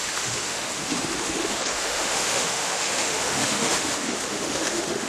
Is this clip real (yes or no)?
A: no